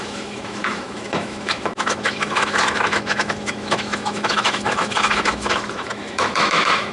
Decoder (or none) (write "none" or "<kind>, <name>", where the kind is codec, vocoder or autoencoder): autoencoder, DAC-VAE